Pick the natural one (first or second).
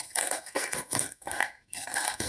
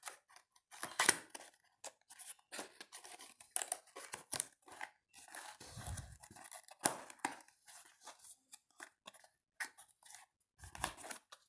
second